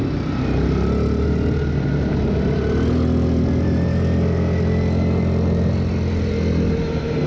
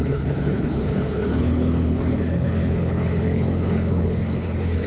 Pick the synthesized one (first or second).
second